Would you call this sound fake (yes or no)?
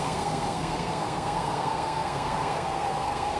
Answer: yes